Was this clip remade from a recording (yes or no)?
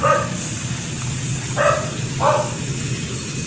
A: no